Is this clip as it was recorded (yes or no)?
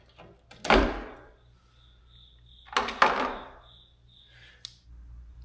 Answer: yes